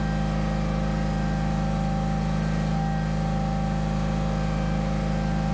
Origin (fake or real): real